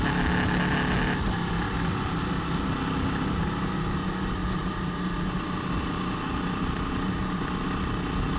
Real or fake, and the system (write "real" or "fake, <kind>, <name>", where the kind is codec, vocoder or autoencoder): real